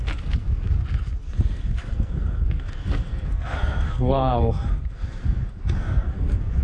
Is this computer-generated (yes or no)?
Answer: yes